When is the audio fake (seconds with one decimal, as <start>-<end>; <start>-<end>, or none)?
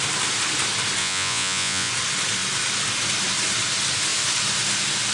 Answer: 1.0-1.9